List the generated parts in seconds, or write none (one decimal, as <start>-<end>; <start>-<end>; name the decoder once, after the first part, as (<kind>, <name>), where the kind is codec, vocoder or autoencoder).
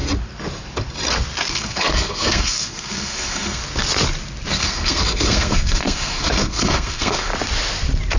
1.5-3.6 (codec, SNAC); 4.5-7.3